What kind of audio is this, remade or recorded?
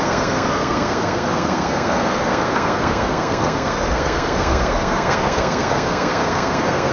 remade